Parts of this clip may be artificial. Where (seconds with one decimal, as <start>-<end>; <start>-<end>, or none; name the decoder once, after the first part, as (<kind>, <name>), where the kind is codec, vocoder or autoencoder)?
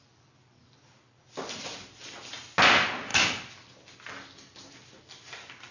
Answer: none